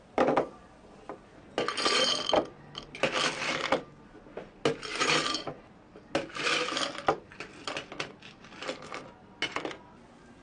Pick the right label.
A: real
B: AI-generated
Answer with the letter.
A